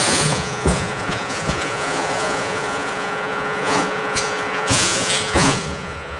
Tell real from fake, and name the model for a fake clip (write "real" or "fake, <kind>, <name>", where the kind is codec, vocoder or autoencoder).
fake, vocoder, Vocos